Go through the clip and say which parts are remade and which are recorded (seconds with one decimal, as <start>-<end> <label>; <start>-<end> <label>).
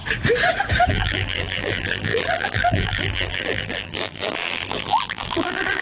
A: 0.0-0.9 recorded; 0.9-5.8 remade